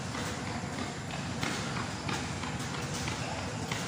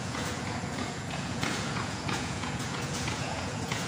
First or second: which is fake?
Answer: second